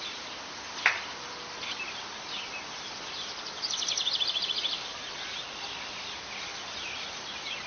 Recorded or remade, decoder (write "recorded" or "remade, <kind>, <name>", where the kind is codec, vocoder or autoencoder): recorded